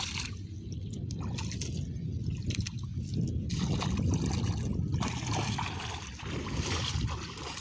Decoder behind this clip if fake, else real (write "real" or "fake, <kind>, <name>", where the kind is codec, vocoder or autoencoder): real